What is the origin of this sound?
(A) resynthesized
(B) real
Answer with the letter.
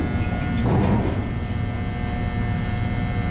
B